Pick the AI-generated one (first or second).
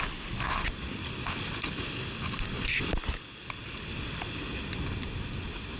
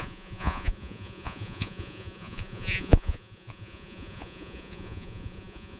second